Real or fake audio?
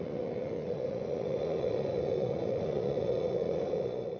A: fake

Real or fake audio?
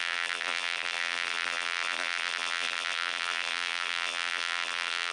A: fake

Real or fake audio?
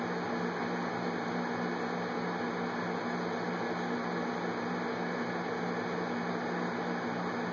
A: real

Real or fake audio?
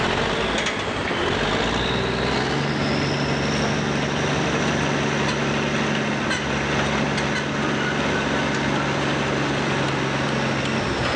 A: real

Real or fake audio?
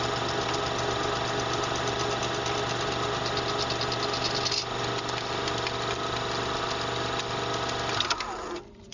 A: real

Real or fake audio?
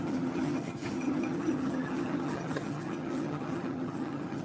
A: fake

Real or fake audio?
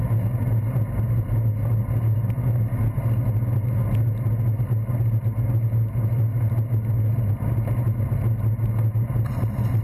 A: real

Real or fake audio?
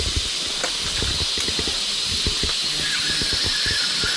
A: real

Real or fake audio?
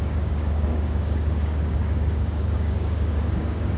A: fake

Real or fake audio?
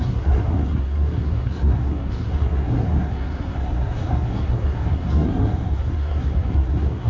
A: fake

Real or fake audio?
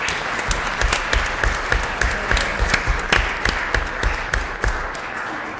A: real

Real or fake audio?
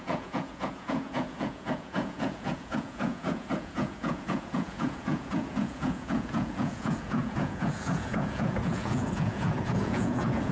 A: fake